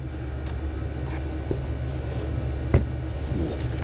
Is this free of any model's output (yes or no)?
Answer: yes